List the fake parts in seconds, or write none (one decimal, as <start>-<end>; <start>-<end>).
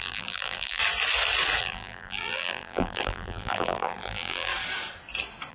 0.0-0.8; 1.6-4.5